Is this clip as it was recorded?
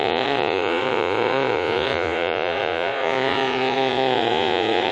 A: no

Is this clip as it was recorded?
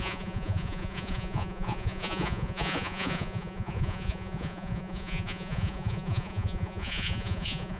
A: no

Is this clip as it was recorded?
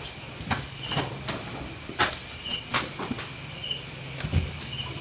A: yes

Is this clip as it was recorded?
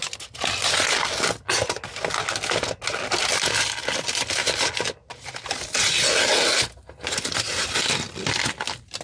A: yes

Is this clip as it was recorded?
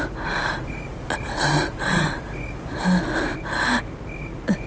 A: yes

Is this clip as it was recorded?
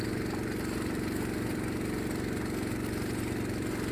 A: yes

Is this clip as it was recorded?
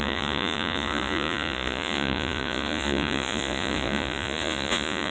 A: no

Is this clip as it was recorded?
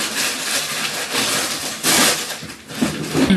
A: yes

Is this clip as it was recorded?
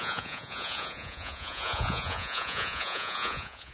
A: no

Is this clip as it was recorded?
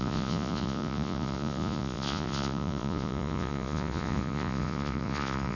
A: no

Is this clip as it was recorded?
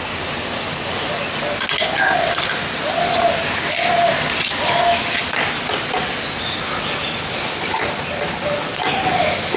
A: yes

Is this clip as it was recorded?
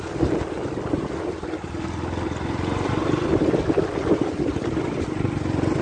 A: yes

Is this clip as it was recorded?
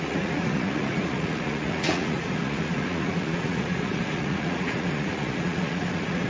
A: no